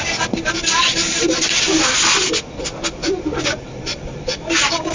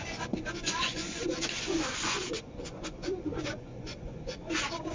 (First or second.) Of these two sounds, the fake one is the second